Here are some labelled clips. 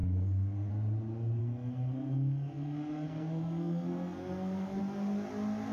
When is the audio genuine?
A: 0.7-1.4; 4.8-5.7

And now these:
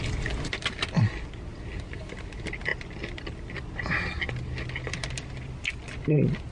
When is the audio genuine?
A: 0.0-6.5

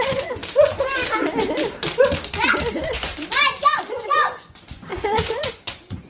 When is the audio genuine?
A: 0.4-2.7; 3.1-3.8

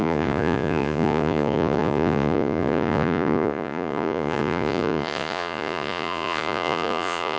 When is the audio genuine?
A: none

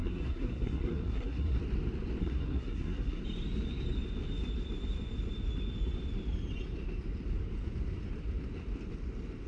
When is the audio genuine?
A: 1.6-2.2; 3.2-9.5